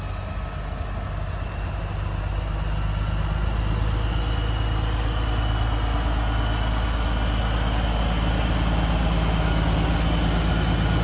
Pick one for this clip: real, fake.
real